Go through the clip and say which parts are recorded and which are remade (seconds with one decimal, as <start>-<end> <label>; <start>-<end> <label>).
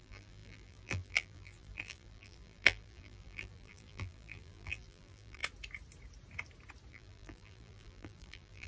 0.0-5.4 remade; 5.4-6.9 recorded; 6.9-8.7 remade